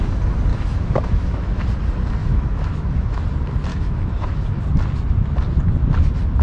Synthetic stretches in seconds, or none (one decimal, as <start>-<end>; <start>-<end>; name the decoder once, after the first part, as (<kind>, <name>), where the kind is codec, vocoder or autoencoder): 0.5-1.6 (autoencoder, DAC-VAE); 2.2-3.2; 3.7-4.6